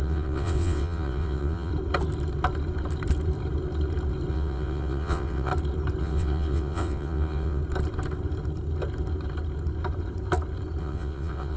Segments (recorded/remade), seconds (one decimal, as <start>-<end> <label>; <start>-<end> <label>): 0.0-1.7 remade; 1.7-4.3 recorded; 4.3-5.5 remade; 5.5-6.0 recorded; 6.0-7.6 remade; 7.6-10.8 recorded; 10.8-11.6 remade